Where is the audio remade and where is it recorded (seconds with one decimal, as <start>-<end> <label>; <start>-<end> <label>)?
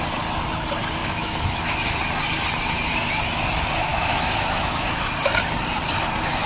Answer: 0.0-1.0 recorded; 1.0-2.0 remade; 2.0-3.9 recorded; 3.9-5.1 remade; 5.1-6.5 recorded